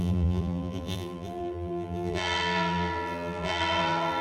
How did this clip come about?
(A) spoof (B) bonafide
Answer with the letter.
A